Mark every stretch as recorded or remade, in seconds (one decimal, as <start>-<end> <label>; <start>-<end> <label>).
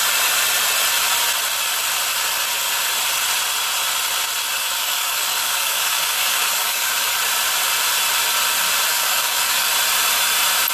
0.0-4.6 recorded; 4.6-6.9 remade; 6.9-8.9 recorded; 8.9-9.7 remade; 9.7-10.7 recorded